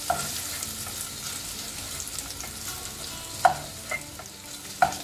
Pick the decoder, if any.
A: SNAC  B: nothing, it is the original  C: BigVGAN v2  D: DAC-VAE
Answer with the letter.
B